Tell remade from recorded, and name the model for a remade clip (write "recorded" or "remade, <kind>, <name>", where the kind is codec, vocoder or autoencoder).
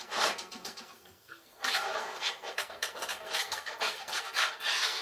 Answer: remade, codec, SNAC